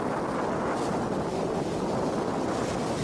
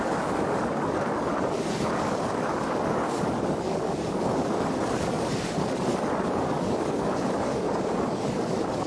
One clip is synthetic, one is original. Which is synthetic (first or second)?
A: second